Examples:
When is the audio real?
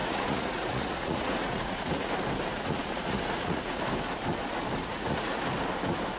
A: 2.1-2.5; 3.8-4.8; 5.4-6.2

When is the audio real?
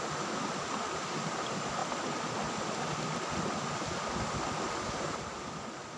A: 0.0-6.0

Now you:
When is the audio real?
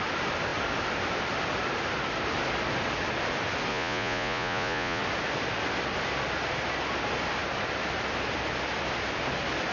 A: 0.0-3.7; 5.0-9.7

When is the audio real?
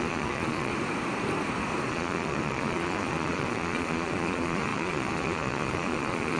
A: 0.7-1.9